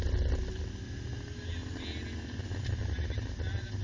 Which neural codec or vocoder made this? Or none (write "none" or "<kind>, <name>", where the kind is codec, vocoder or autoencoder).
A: none